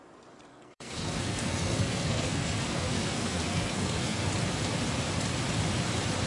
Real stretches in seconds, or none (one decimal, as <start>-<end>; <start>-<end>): 0.0-0.5; 4.3-6.3

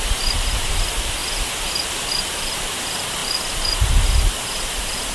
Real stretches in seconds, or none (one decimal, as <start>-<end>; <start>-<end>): 1.2-2.3

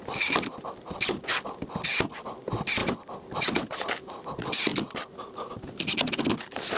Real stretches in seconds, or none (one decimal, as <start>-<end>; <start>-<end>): 0.0-6.8

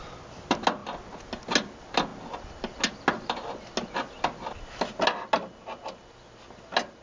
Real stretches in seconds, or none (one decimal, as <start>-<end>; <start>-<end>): 0.0-7.0

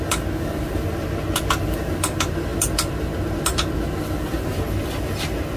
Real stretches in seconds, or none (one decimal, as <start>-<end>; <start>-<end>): 0.0-5.6